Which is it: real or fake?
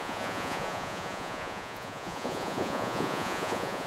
fake